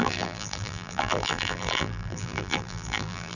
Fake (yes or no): yes